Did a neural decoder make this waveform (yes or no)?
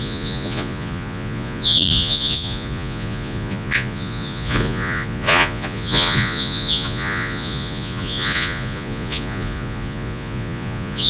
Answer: yes